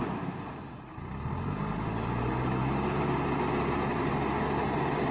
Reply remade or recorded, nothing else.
recorded